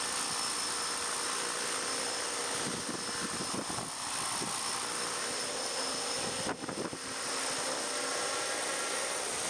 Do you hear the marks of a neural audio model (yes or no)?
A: no